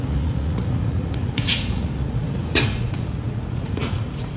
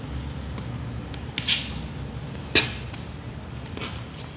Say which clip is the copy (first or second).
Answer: first